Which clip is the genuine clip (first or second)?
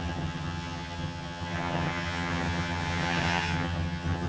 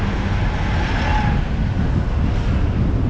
second